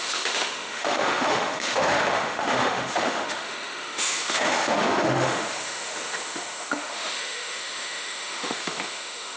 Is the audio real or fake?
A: fake